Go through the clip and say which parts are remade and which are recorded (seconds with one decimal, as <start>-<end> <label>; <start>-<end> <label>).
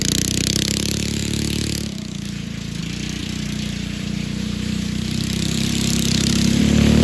0.0-3.2 recorded; 3.2-6.6 remade; 6.6-7.0 recorded